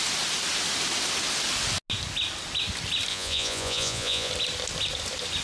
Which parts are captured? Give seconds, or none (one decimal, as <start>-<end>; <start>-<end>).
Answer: 0.0-3.1; 4.3-5.4